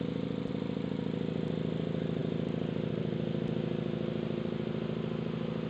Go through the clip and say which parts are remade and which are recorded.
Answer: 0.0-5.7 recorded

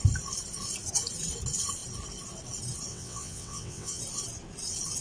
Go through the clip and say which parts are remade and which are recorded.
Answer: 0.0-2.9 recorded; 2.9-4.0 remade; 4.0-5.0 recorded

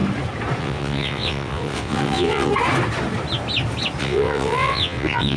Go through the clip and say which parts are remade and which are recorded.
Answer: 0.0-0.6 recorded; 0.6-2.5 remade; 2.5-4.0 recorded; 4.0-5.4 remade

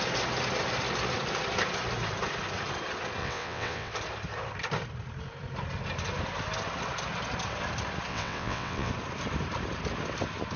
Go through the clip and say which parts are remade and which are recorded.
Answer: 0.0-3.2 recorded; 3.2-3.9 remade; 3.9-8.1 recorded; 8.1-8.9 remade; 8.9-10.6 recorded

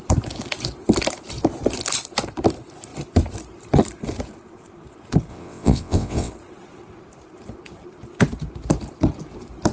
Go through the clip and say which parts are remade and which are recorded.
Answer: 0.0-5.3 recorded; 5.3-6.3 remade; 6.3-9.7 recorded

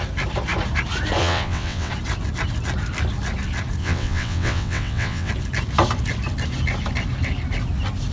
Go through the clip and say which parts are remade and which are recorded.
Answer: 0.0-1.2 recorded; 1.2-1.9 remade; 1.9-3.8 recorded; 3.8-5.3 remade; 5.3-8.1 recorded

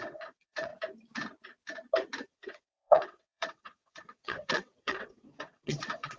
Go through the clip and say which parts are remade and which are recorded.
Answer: 0.0-0.7 remade; 0.7-2.3 recorded; 2.3-6.2 remade